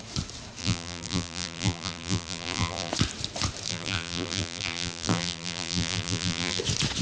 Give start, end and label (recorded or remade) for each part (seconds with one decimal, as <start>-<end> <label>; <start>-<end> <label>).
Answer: 0.0-0.6 recorded; 0.6-2.9 remade; 2.9-3.7 recorded; 3.7-6.6 remade; 6.6-7.0 recorded